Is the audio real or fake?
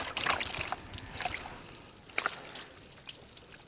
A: real